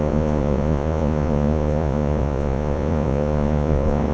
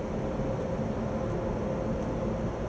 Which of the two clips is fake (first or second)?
first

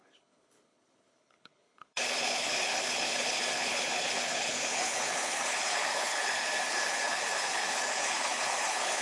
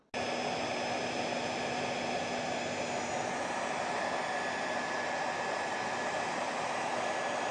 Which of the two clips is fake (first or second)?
first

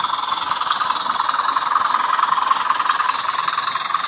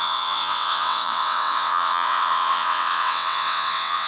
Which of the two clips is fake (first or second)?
second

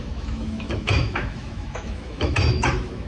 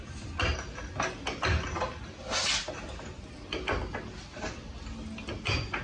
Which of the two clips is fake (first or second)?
first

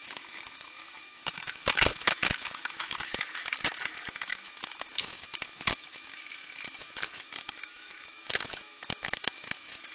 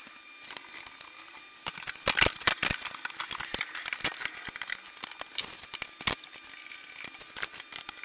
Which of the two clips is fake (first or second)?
first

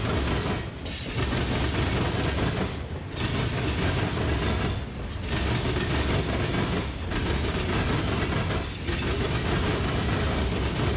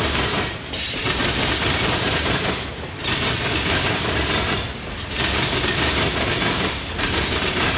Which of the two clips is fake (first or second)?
second